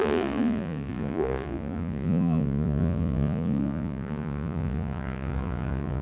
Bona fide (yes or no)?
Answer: no